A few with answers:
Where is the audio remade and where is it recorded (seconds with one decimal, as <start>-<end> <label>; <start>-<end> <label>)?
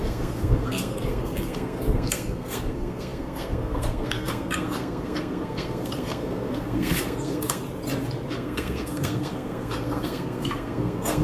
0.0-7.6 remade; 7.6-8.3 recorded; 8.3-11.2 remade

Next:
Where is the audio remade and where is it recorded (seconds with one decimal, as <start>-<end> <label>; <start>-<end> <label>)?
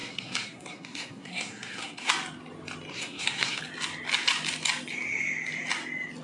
0.0-2.1 remade; 2.1-2.9 recorded; 2.9-3.6 remade; 3.6-6.2 recorded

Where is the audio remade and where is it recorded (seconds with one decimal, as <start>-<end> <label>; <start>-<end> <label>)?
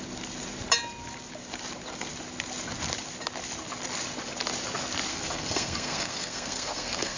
0.0-5.1 recorded; 5.1-7.2 remade